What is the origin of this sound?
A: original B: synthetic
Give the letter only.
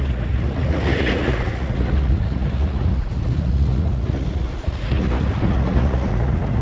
B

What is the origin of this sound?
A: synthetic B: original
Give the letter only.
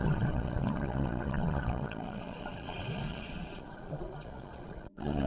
A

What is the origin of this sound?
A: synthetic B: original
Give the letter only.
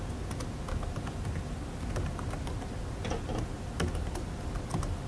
B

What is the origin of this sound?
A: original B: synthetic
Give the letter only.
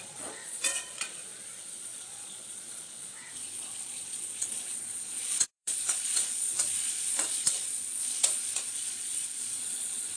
B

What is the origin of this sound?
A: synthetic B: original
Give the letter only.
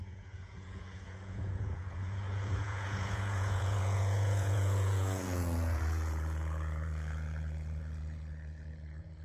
A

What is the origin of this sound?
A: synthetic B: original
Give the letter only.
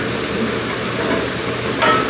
B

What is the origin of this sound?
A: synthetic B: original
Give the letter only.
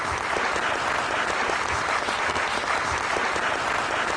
B